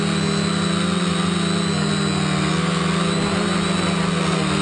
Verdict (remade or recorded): recorded